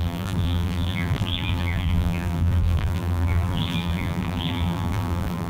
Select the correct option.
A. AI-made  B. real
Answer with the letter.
A